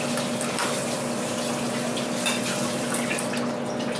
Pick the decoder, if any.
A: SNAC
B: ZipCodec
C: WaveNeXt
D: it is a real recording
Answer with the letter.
D